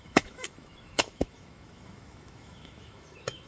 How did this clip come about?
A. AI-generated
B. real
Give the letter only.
A